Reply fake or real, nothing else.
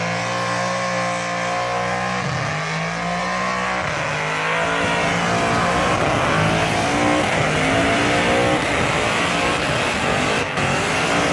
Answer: real